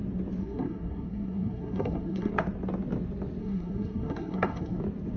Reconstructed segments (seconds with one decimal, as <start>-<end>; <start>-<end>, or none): 0.4-2.3; 3.4-4.8